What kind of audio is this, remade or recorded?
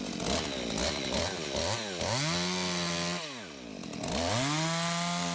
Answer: recorded